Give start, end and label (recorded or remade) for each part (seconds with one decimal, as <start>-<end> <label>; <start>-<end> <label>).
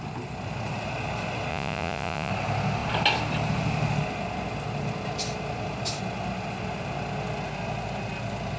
0.0-1.5 recorded; 1.5-2.3 remade; 2.3-8.6 recorded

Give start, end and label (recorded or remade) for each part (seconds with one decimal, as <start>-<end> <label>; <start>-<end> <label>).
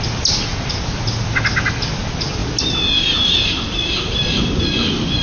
0.0-5.2 recorded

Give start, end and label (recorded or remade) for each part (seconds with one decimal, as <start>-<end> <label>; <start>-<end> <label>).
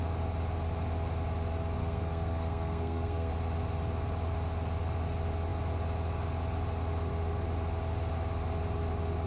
0.0-1.8 recorded; 1.8-3.3 remade; 3.3-9.3 recorded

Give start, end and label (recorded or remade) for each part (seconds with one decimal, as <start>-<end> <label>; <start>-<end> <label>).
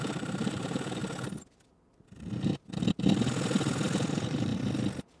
0.0-1.0 remade; 1.0-4.1 recorded; 4.1-4.5 remade; 4.5-5.2 recorded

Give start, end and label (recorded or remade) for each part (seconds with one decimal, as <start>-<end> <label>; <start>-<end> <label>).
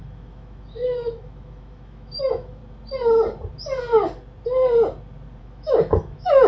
0.0-2.6 remade; 2.6-5.4 recorded; 5.4-6.5 remade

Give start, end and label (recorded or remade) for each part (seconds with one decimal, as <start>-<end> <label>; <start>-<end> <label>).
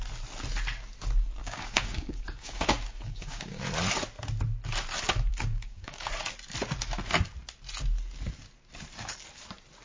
0.0-1.4 recorded; 1.4-3.6 remade; 3.6-5.3 recorded; 5.3-6.1 remade; 6.1-9.8 recorded